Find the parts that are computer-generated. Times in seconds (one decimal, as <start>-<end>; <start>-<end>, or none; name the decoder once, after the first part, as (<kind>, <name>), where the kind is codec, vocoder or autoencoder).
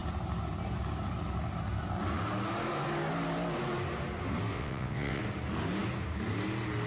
4.5-5.2 (vocoder, WaveNeXt)